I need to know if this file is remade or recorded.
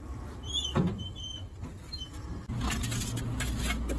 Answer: recorded